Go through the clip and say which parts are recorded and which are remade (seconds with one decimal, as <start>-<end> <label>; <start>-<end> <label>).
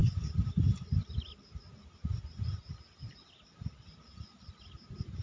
0.0-5.2 recorded